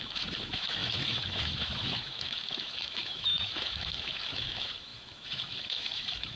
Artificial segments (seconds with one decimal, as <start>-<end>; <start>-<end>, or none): 0.0-6.4